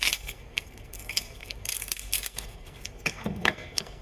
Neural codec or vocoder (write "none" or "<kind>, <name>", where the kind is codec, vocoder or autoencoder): codec, SNAC